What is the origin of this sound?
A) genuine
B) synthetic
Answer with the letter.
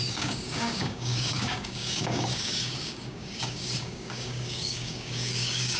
B